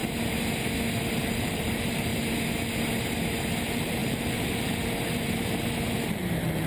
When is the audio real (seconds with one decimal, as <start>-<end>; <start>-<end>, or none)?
0.0-1.0; 2.1-3.6